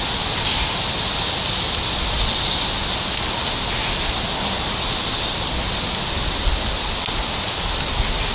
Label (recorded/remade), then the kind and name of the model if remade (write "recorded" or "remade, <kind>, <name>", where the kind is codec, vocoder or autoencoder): recorded